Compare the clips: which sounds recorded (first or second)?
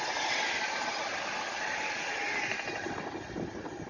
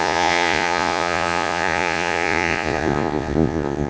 first